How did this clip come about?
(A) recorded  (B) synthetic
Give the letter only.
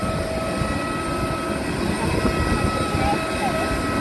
A